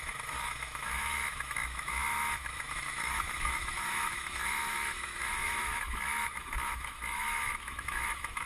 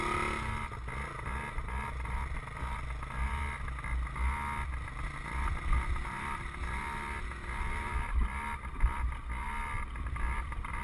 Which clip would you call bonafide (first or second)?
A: second